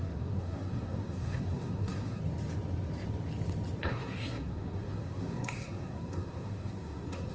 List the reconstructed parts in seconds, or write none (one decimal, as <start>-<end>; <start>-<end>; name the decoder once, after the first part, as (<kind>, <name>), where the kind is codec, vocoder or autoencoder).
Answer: 0.0-2.2 (codec, SNAC); 3.8-7.3